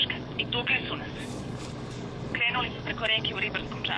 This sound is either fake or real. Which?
fake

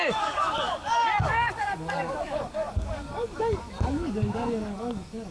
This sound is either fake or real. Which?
fake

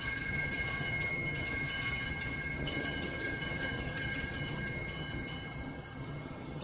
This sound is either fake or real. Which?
fake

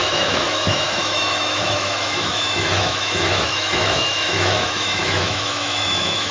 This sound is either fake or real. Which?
fake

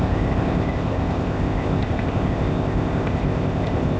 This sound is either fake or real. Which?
fake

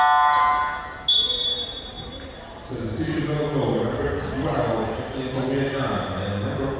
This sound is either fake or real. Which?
real